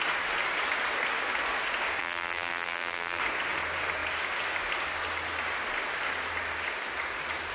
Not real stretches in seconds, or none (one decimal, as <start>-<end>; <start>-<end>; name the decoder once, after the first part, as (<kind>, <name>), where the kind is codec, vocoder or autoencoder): 2.0-3.2 (vocoder, BigVGAN v2)